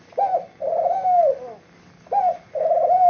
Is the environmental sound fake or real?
real